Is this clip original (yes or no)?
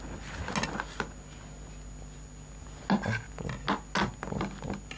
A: yes